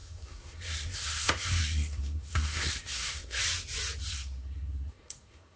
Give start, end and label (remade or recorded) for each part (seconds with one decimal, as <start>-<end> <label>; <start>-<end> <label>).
0.0-3.4 remade; 3.4-4.1 recorded; 4.1-5.6 remade